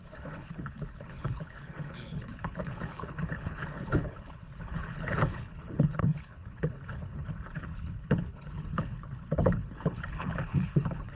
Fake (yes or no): yes